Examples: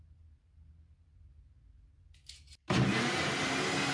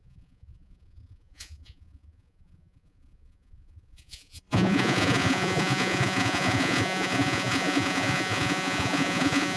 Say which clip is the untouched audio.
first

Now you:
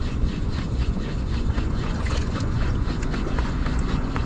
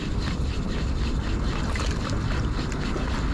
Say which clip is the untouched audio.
second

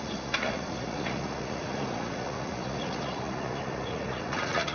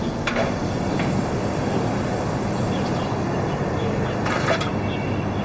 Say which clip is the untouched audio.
second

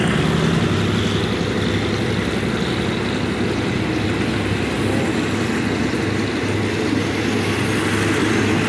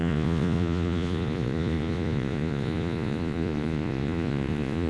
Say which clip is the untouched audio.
first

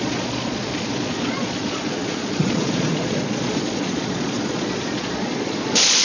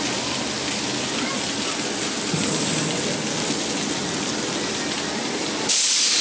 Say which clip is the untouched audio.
second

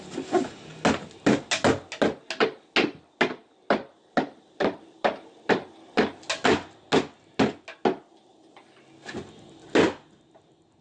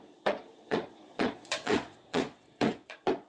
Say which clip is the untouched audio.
first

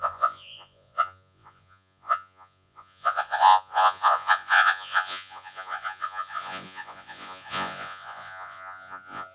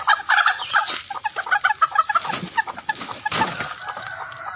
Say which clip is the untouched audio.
second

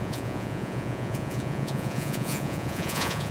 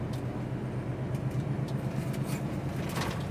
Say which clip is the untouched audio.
second